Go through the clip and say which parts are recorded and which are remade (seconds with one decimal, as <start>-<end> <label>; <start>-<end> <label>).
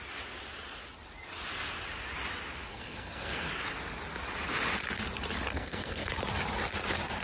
0.0-2.7 recorded; 2.7-3.5 remade; 3.5-5.5 recorded; 5.5-6.1 remade; 6.1-7.2 recorded